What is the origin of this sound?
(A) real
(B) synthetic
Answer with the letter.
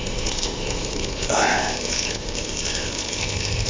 B